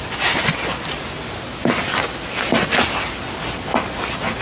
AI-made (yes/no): no